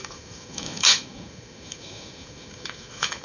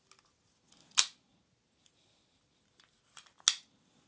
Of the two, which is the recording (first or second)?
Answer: second